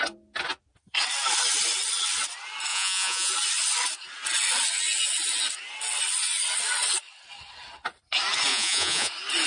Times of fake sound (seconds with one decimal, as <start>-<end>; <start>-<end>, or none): 2.7-3.3; 8.5-9.1